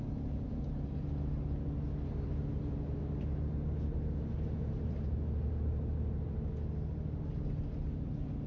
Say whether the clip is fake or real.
real